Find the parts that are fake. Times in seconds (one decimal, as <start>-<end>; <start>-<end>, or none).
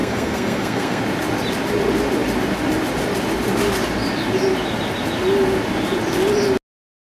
0.0-1.0